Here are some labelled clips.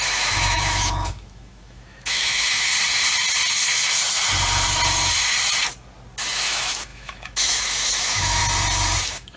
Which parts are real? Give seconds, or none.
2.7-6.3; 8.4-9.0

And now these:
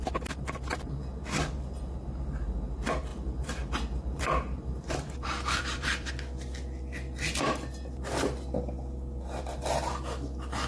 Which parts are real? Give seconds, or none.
0.0-3.1; 6.1-10.7

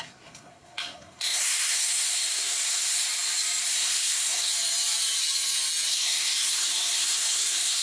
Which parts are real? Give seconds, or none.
3.1-3.6; 4.5-5.9